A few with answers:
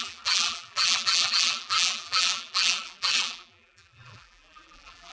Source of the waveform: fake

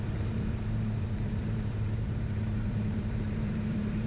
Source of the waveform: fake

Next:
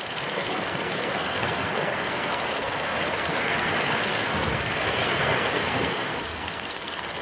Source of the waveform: fake